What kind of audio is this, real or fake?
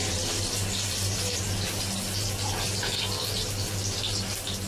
real